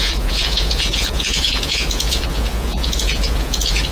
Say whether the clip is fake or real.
fake